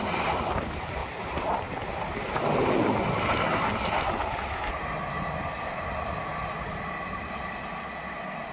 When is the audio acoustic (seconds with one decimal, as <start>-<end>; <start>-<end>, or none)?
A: 0.0-8.5